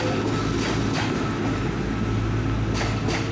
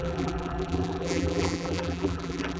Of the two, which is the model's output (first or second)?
second